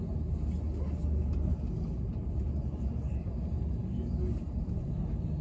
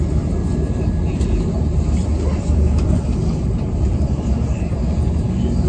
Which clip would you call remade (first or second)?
second